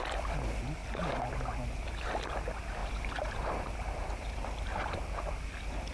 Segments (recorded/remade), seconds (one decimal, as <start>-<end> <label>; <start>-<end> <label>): 0.0-0.8 recorded; 0.8-1.9 remade; 1.9-2.8 recorded; 2.8-4.2 remade; 4.2-5.9 recorded